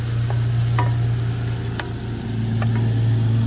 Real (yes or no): yes